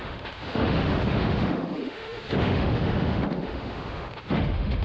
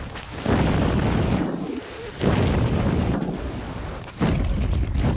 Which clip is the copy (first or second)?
first